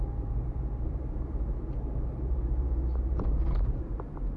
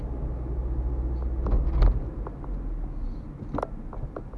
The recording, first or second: second